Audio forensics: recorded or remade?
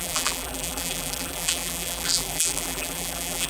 remade